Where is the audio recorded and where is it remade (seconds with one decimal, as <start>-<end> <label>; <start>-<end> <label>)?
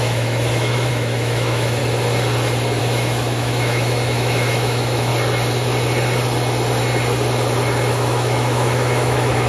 0.0-1.8 remade; 1.8-2.8 recorded; 2.8-5.1 remade; 5.1-7.9 recorded; 7.9-9.5 remade